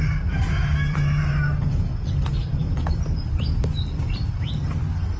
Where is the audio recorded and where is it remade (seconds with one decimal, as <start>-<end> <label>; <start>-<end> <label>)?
0.0-0.6 recorded; 0.6-1.4 remade; 1.4-5.2 recorded